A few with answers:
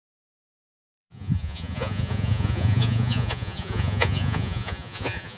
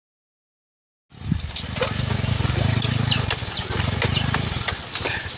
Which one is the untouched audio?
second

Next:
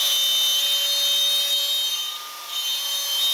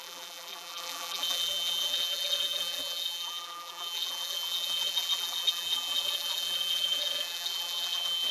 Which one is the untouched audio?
first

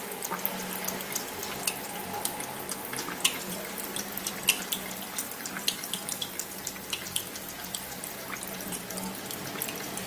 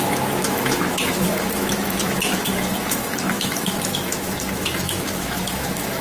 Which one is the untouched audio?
first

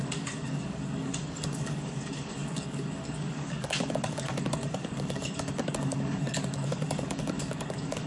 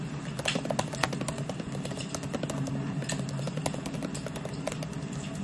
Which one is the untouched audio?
second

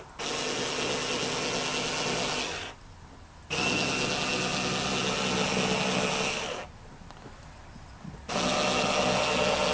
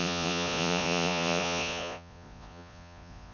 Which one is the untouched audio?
first